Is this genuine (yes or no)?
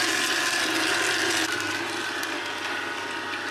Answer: yes